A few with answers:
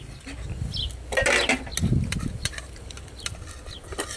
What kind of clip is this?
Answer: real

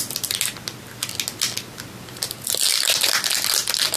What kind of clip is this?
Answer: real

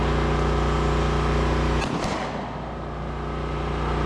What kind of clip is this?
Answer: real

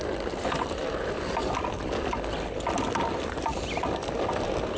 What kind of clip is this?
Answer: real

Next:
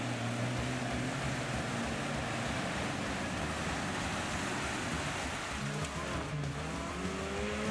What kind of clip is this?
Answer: real